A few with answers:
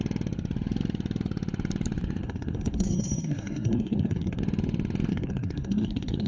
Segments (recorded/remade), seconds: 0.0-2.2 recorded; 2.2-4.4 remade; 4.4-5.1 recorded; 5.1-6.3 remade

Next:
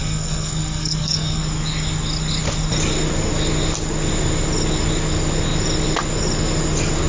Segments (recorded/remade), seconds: 0.0-1.4 remade; 1.4-7.1 recorded

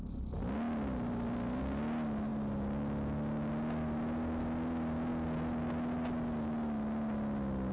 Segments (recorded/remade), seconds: 0.0-7.7 recorded

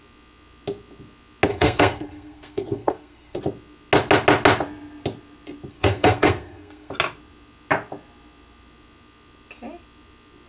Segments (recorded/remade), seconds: 0.0-1.5 recorded; 1.5-3.4 remade; 3.4-5.7 recorded; 5.7-6.9 remade; 6.9-10.5 recorded

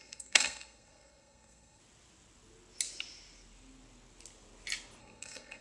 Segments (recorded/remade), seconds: 0.0-1.8 remade; 1.8-5.0 recorded; 5.0-5.6 remade

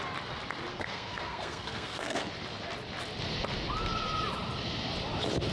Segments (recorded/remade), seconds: 0.0-0.7 recorded; 0.7-2.2 remade; 2.2-5.5 recorded

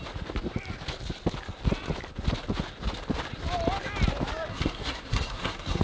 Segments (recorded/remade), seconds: 0.0-4.5 recorded; 4.5-5.8 remade